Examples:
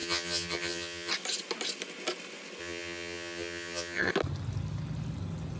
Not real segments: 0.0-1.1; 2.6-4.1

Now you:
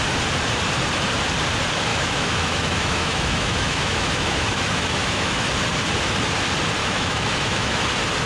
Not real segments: 1.9-5.5; 6.8-7.8

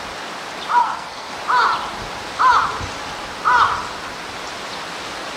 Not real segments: 0.8-1.3

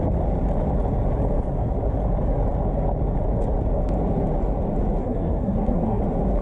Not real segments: 5.0-6.0